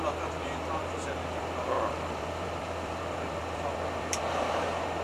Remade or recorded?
remade